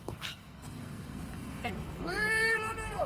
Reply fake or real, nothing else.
fake